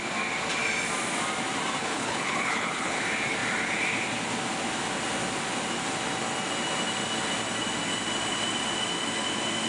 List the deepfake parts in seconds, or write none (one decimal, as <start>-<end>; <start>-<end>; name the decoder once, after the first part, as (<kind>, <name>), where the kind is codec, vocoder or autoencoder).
1.8-3.0 (codec, HILCodec)